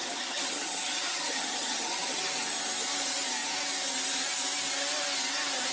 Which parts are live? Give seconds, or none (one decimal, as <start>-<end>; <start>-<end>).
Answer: 2.2-5.7